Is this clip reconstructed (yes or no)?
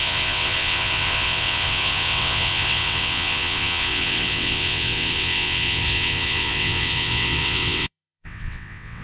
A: yes